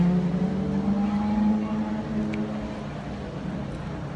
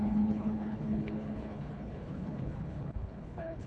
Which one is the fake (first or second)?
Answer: second